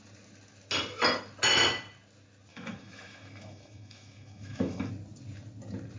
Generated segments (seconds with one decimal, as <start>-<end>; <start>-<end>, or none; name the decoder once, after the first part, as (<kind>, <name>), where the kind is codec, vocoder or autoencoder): 2.5-4.9 (autoencoder, DAC-VAE)